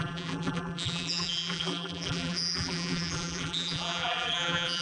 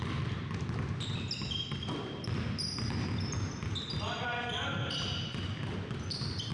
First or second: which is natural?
second